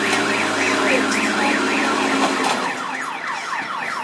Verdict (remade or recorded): recorded